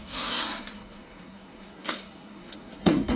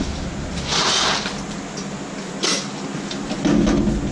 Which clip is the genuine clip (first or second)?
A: second